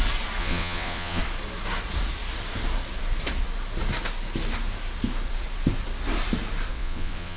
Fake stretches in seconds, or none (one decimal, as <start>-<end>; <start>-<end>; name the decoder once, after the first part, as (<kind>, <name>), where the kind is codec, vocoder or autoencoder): 0.4-1.2 (vocoder, WaveNeXt); 6.7-7.4